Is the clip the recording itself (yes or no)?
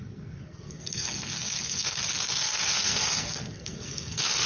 no